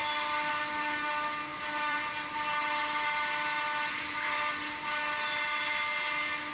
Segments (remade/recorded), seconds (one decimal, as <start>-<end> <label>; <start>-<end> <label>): 0.0-1.5 recorded; 1.5-2.1 remade; 2.1-2.8 recorded; 2.8-5.0 remade; 5.0-6.5 recorded